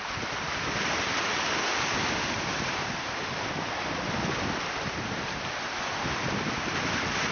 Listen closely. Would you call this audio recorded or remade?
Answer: recorded